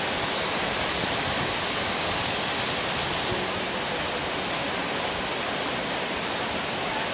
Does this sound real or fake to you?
real